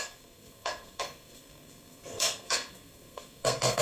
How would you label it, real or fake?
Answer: fake